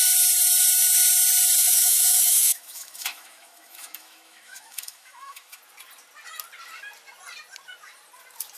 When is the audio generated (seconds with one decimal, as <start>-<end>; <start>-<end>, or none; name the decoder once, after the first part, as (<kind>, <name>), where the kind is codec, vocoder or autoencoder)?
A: 1.6-5.6 (autoencoder, DAC-VAE)